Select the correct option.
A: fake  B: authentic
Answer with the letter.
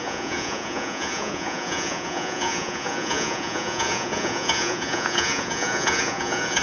A